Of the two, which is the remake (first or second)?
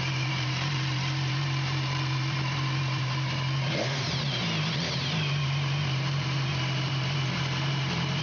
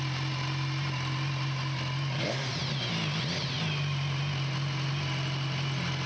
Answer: first